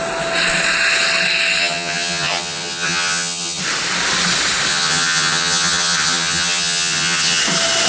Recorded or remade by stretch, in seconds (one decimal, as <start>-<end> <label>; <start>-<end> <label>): 0.0-1.6 recorded; 1.6-3.6 remade; 3.6-4.7 recorded; 4.7-7.4 remade; 7.4-7.9 recorded

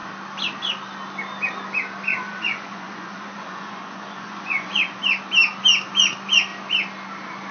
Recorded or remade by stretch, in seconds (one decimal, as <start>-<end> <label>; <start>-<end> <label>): 0.0-2.1 recorded; 2.1-5.0 remade; 5.0-7.5 recorded

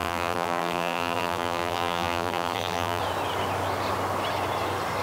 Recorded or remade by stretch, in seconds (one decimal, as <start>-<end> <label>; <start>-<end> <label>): 0.0-3.0 remade; 3.0-5.0 recorded

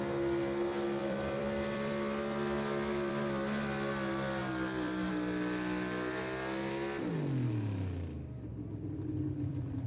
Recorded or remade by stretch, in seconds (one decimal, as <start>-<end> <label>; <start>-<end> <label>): 0.0-1.0 recorded; 1.0-3.1 remade; 3.1-4.4 recorded; 4.4-5.1 remade; 5.1-8.5 recorded; 8.5-9.9 remade